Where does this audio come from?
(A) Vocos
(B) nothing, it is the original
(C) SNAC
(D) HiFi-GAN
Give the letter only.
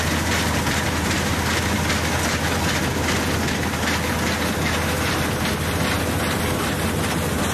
B